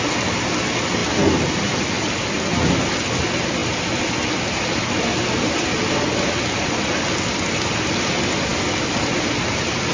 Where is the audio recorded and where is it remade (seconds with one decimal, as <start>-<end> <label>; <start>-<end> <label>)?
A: 0.0-9.9 recorded